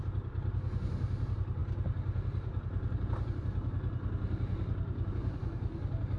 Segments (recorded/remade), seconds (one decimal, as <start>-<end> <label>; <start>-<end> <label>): 0.0-6.2 recorded